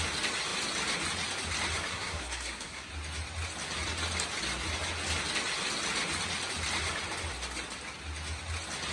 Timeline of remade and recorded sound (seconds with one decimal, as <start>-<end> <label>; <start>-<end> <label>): 0.0-1.9 recorded; 1.9-2.9 remade; 2.9-8.9 recorded